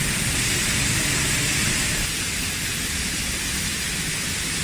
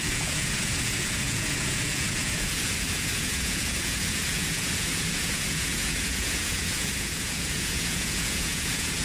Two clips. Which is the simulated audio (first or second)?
second